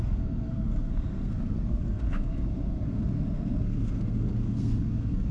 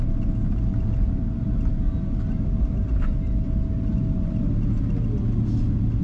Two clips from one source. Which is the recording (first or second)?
second